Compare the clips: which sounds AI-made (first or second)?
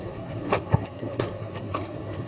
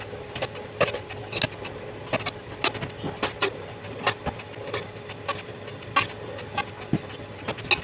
first